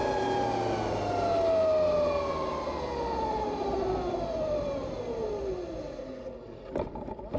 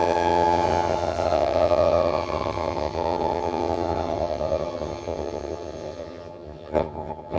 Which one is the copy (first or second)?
second